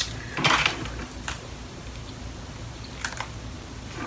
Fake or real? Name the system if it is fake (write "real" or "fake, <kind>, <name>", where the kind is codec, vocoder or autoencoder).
real